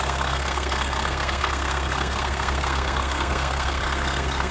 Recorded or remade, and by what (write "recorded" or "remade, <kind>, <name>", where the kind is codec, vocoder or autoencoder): remade, codec, SNAC